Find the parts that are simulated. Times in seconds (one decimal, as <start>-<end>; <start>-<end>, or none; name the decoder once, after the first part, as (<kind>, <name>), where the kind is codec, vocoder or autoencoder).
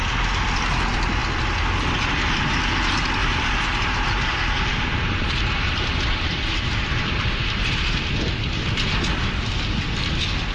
3.2-8.0 (vocoder, BigVGAN v2)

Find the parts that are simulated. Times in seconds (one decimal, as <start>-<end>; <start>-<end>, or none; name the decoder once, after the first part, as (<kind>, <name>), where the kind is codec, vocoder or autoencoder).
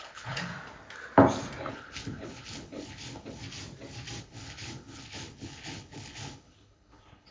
0.0-0.5 (codec, HILCodec); 1.7-3.4; 4.2-7.3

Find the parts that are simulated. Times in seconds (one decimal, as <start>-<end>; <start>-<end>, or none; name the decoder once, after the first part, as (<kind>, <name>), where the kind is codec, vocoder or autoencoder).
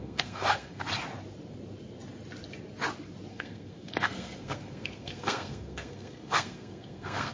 0.0-0.8 (codec, SNAC); 3.3-7.3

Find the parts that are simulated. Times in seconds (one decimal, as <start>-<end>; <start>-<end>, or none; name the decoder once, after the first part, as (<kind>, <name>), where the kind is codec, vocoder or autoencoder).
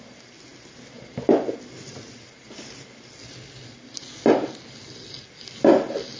none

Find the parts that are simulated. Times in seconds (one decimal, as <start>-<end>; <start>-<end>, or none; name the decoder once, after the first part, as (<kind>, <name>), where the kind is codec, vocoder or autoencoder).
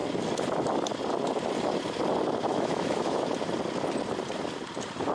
2.5-3.3 (autoencoder, DAC-VAE)